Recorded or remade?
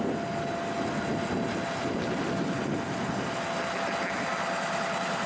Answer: recorded